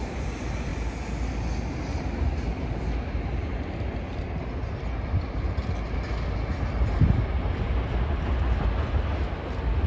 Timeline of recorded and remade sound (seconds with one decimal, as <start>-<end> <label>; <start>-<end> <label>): 0.0-9.9 recorded